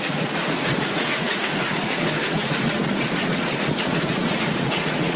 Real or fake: fake